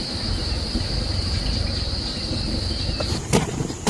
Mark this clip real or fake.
real